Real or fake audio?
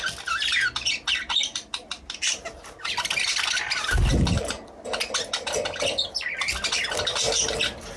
real